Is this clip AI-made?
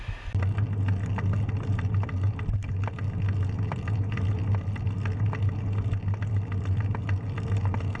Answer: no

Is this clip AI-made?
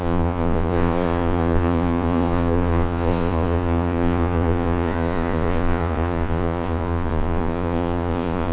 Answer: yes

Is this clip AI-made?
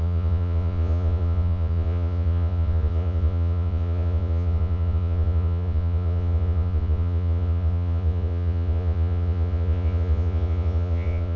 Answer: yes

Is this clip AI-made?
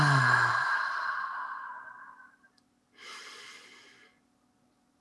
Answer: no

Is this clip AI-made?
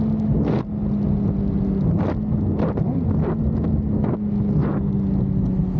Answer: no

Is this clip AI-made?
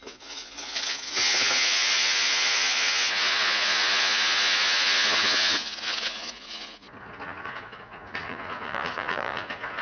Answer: yes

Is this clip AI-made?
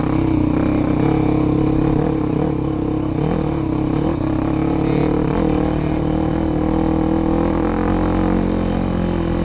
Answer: no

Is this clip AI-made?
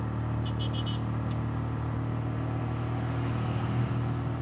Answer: no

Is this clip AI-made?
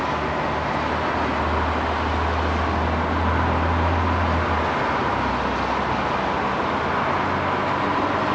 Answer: no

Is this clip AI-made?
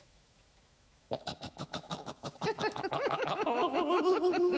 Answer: yes